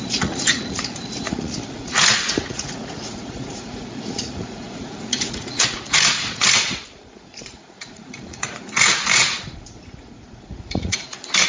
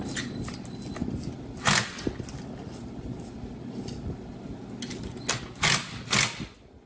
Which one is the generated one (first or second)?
first